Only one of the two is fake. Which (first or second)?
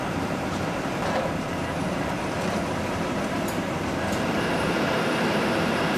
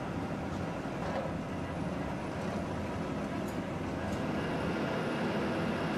first